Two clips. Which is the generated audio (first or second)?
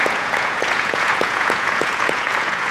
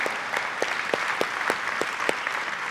first